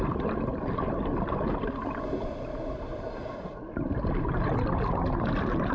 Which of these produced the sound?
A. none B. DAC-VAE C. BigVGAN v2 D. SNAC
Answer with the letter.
A